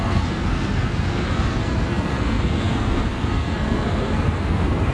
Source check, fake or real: fake